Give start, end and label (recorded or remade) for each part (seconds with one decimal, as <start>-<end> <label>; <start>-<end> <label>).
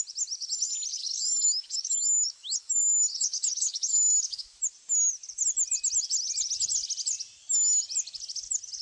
0.0-0.9 recorded; 0.9-4.6 remade; 4.6-8.8 recorded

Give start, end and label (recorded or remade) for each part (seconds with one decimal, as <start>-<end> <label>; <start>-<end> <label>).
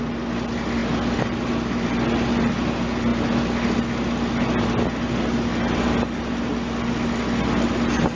0.0-8.2 recorded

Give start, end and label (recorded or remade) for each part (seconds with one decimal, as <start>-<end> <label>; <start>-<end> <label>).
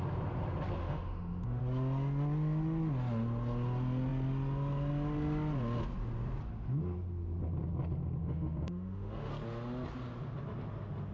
0.0-0.8 recorded; 0.8-1.6 remade; 1.6-8.2 recorded; 8.2-9.3 remade; 9.3-11.1 recorded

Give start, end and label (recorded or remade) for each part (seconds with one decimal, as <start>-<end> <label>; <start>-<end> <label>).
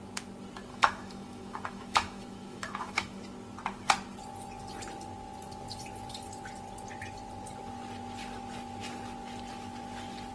0.0-0.7 recorded; 0.7-3.2 remade; 3.2-10.3 recorded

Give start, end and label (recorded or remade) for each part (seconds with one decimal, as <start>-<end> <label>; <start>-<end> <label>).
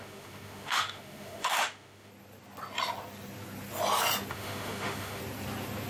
0.0-2.1 remade; 2.1-4.3 recorded; 4.3-5.2 remade; 5.2-5.9 recorded